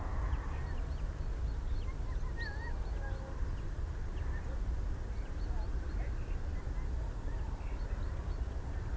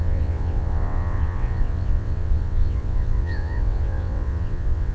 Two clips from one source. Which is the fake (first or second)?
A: second